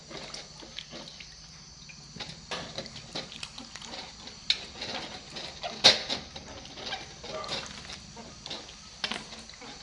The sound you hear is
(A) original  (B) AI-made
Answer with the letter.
A